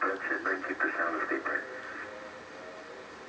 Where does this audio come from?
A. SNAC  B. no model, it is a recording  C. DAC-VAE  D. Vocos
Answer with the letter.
B